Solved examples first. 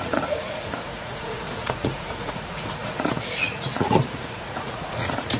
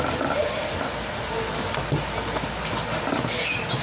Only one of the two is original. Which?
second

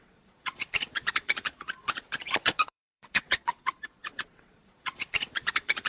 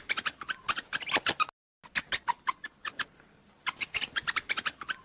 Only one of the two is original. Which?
second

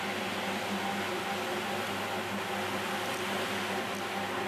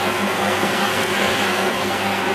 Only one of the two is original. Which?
first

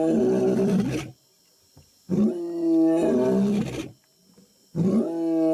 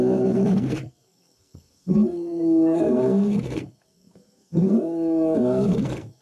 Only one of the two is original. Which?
first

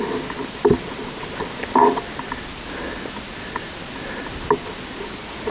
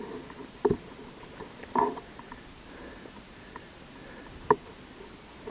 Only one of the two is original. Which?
first